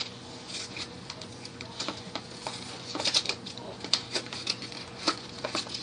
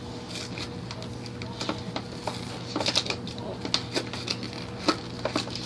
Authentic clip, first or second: second